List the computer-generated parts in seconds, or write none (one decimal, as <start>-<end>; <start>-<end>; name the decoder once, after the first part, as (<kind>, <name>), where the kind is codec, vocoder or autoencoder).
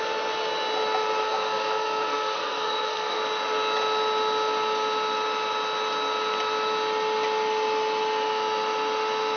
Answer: 1.2-3.2 (codec, SNAC)